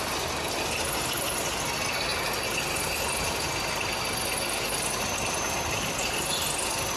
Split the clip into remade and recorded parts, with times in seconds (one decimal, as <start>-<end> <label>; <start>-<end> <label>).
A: 0.0-7.0 recorded